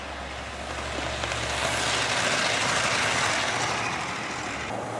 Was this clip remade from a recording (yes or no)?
no